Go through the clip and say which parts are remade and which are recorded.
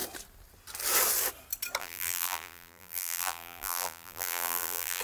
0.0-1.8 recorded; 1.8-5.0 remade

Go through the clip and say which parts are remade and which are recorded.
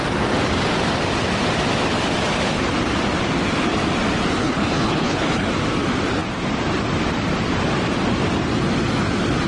0.0-4.4 recorded; 4.4-5.5 remade; 5.5-9.5 recorded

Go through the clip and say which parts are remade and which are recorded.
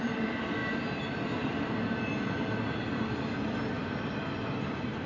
0.0-5.1 recorded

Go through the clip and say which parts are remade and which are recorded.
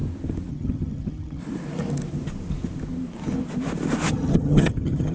0.0-0.5 recorded; 0.5-1.4 remade; 1.4-4.1 recorded; 4.1-5.1 remade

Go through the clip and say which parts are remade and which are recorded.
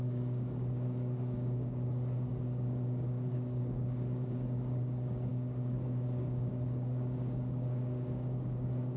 0.0-9.0 remade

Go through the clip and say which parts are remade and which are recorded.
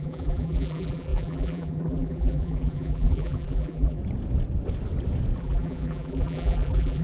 0.0-4.0 remade; 4.0-5.4 recorded; 5.4-7.0 remade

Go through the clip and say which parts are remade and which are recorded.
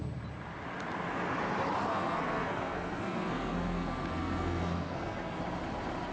0.0-1.9 recorded; 1.9-5.4 remade; 5.4-6.1 recorded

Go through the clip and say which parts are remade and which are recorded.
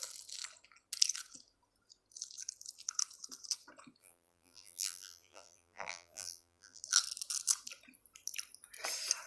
0.0-4.0 recorded; 4.0-6.8 remade; 6.8-9.3 recorded